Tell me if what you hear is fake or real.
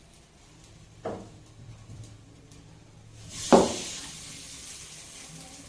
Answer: real